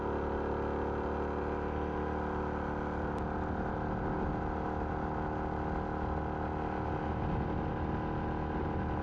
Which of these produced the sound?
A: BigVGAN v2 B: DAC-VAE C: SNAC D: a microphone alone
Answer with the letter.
D